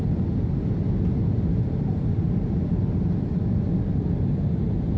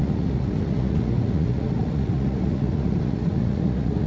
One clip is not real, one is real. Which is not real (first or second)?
second